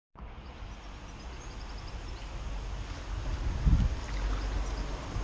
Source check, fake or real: real